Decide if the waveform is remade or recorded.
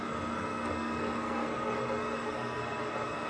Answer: remade